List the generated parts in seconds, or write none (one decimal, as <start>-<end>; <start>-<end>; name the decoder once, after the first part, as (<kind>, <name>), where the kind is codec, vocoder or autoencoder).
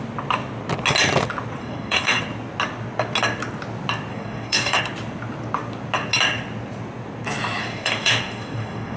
1.6-2.2 (codec, DAC); 4.1-4.8; 7.6-9.0